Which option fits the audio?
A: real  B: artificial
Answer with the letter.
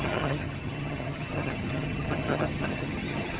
B